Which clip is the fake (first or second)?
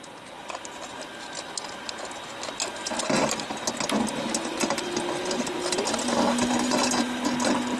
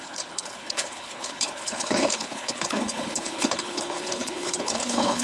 second